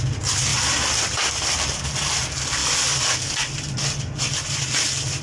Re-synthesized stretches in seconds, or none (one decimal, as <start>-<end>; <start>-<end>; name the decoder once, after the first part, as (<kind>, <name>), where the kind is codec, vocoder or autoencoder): 0.5-1.8 (vocoder, BigVGAN v2); 2.6-5.2